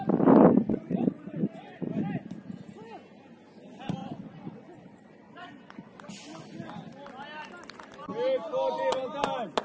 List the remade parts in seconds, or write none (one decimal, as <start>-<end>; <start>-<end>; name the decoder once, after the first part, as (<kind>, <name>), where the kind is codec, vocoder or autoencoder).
0.5-1.9 (vocoder, WaveNeXt); 4.0-6.0